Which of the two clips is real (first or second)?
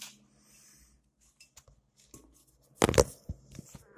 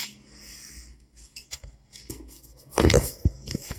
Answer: first